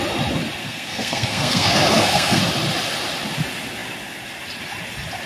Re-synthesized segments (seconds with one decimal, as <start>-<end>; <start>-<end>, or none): 0.6-2.4